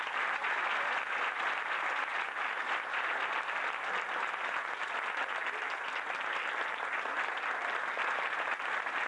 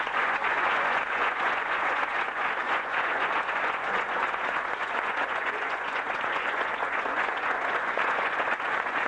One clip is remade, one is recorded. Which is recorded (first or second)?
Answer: first